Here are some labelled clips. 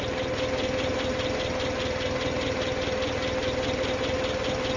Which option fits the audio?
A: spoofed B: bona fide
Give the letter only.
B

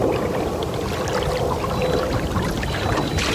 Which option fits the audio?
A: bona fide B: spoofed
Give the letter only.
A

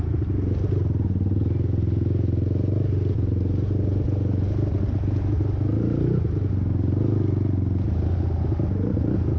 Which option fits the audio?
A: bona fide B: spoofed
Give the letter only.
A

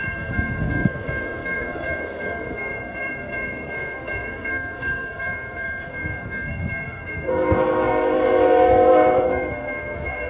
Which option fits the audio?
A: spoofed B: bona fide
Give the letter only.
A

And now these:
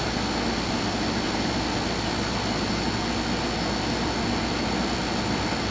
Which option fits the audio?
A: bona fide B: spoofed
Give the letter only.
A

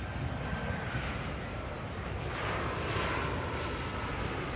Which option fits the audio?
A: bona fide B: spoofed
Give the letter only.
A